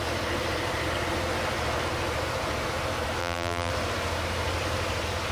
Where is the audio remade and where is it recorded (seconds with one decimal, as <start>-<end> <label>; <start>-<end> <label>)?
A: 0.0-3.2 recorded; 3.2-3.7 remade; 3.7-5.3 recorded